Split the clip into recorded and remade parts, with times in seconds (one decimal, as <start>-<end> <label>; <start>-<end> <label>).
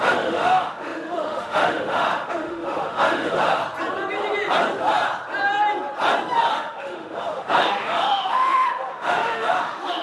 0.0-3.6 remade; 3.6-6.5 recorded; 6.5-10.0 remade